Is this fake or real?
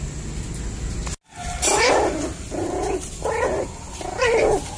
real